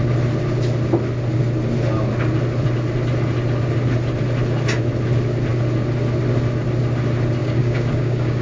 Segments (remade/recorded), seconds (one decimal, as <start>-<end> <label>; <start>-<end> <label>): 0.0-7.4 recorded; 7.4-8.4 remade